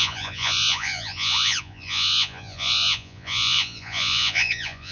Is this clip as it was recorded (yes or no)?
no